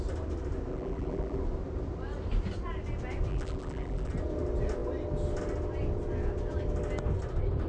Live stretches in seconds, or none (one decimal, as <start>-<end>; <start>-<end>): 0.0-0.7; 1.4-3.3; 4.1-7.7